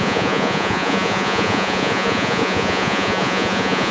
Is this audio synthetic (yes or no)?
yes